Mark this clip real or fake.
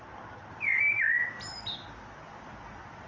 real